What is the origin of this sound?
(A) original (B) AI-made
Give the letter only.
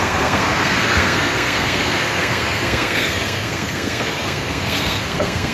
B